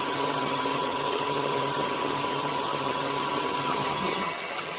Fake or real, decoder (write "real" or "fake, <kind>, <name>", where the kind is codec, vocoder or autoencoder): fake, vocoder, HiFi-GAN